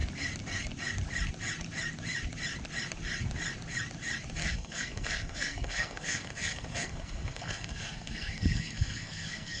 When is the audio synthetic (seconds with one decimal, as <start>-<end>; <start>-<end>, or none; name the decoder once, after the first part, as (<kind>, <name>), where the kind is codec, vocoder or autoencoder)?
4.4-9.6 (codec, SNAC)